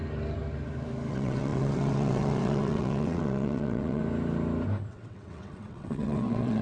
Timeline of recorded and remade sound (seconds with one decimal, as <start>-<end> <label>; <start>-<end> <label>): 0.0-1.1 recorded; 1.1-4.0 remade; 4.0-4.9 recorded; 4.9-6.6 remade